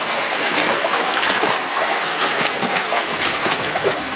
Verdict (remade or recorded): remade